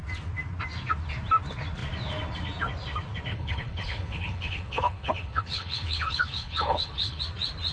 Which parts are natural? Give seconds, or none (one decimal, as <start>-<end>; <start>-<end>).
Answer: 0.0-3.3; 7.2-7.7